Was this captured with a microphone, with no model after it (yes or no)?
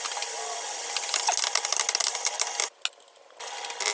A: yes